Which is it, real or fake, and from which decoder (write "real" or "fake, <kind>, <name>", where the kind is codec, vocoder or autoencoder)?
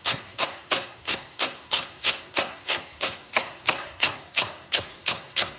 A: fake, codec, SNAC